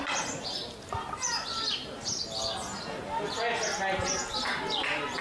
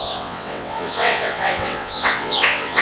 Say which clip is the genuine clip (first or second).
first